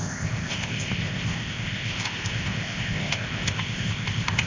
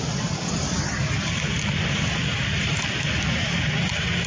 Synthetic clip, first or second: first